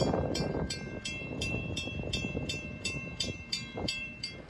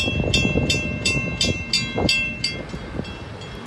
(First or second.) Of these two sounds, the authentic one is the second